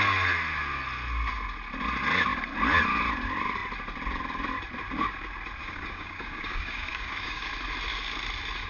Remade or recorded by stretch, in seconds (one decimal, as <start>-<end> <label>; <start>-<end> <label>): 0.0-5.6 recorded; 5.6-7.5 remade; 7.5-8.7 recorded